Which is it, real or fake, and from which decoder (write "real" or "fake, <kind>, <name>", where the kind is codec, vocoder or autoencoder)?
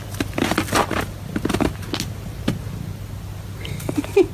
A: real